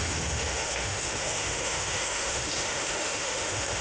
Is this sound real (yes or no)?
no